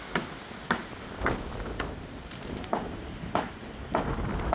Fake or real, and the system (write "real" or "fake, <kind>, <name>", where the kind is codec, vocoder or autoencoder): real